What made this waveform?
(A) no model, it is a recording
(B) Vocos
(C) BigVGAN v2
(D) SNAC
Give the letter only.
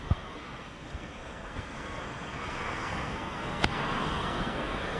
D